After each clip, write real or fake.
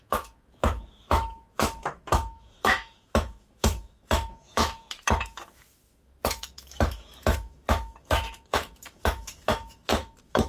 fake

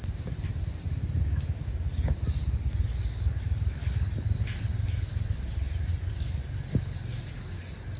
real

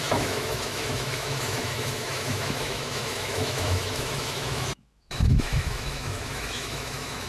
fake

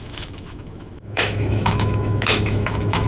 fake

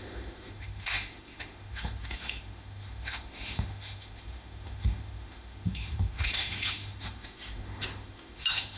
fake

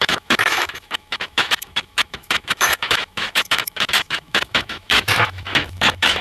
fake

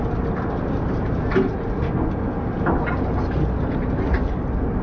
real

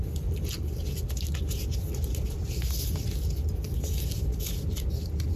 real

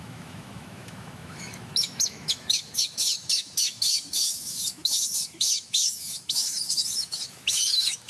fake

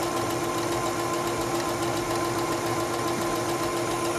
real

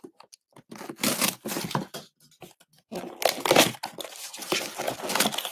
real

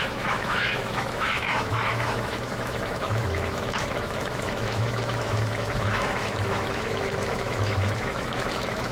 fake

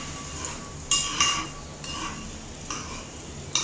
real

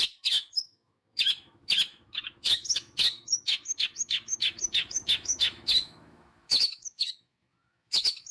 fake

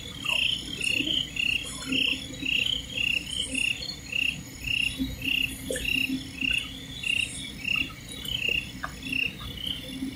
real